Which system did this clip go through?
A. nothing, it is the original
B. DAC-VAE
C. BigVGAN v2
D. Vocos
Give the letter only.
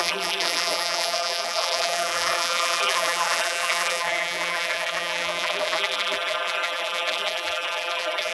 C